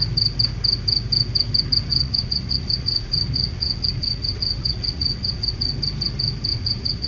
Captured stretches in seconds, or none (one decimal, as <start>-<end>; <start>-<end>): 0.0-1.9; 5.6-6.5